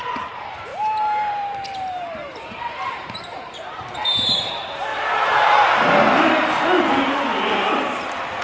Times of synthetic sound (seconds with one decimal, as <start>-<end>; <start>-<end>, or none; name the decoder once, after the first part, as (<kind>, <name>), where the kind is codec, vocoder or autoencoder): 0.7-2.6 (vocoder, BigVGAN v2); 3.0-4.5; 4.9-5.6